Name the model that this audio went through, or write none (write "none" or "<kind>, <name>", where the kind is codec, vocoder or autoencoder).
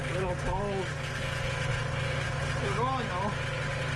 none